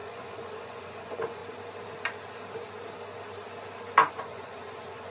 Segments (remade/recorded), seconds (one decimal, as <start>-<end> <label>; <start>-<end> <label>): 0.0-1.4 remade; 1.4-4.1 recorded; 4.1-5.1 remade